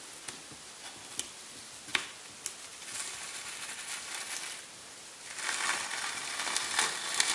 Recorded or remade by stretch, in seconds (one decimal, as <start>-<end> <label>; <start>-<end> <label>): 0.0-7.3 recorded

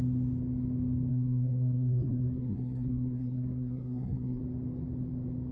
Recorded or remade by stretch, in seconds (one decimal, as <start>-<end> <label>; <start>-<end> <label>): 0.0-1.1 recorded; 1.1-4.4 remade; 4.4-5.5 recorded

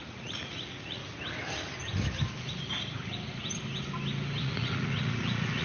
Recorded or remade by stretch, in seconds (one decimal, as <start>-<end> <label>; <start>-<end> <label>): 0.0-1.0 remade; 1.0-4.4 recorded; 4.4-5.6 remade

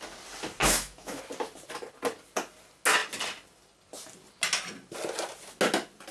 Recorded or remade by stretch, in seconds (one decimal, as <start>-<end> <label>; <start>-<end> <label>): 0.0-0.6 recorded; 0.6-1.2 remade; 1.2-6.1 recorded